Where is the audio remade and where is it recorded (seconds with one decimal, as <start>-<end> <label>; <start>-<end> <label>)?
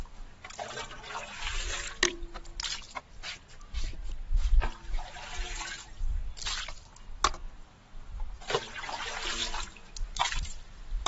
0.0-9.4 recorded; 9.4-9.9 remade; 9.9-11.1 recorded